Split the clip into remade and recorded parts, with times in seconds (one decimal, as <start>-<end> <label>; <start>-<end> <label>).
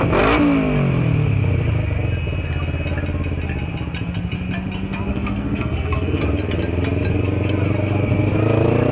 0.0-5.1 recorded; 5.1-6.2 remade; 6.2-8.9 recorded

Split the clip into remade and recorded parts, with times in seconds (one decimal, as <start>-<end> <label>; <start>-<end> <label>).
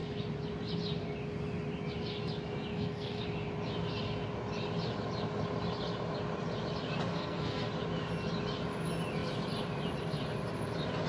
0.0-2.7 recorded; 2.7-3.2 remade; 3.2-7.1 recorded; 7.1-7.7 remade; 7.7-11.1 recorded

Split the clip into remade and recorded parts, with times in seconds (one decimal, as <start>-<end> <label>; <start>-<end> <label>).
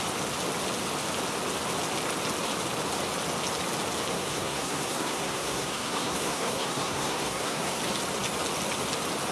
0.0-4.1 recorded; 4.1-7.8 remade; 7.8-9.3 recorded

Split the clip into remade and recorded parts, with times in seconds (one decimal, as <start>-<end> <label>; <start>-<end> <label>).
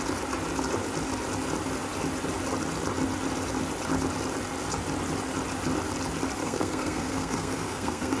0.0-6.4 recorded; 6.4-8.2 remade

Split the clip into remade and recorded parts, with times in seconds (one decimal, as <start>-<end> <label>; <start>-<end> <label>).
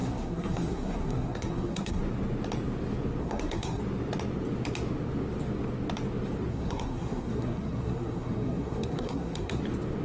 0.0-2.0 remade; 2.0-3.2 recorded; 3.2-3.8 remade; 3.8-6.5 recorded; 6.5-9.6 remade; 9.6-10.0 recorded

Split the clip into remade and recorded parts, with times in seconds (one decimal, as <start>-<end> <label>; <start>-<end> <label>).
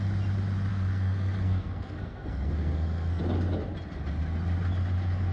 0.0-0.7 recorded; 0.7-3.2 remade; 3.2-5.3 recorded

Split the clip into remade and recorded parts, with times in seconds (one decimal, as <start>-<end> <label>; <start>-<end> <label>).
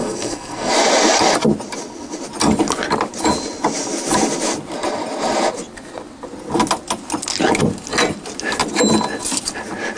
0.0-0.7 remade; 0.7-10.0 recorded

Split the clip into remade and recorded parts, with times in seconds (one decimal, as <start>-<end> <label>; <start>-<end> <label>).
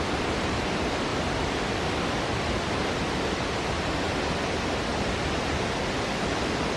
0.0-6.8 recorded